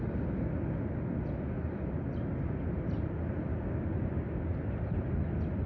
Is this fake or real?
real